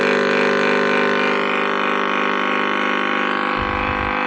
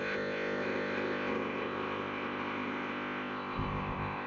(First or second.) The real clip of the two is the first